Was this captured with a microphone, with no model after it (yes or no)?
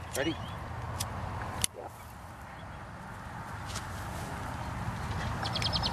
yes